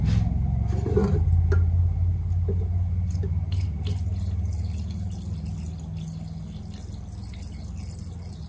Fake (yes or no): no